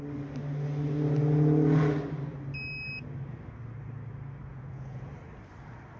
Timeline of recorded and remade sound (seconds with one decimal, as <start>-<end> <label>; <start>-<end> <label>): 0.0-4.5 recorded; 4.5-5.1 remade; 5.1-6.0 recorded